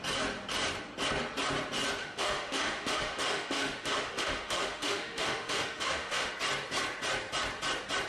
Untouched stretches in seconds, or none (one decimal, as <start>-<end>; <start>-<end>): 0.0-2.0; 6.3-8.1